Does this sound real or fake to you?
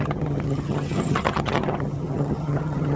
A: fake